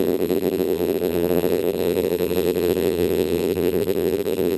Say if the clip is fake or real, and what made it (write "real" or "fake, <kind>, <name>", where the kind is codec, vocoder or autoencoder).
fake, vocoder, BigVGAN v2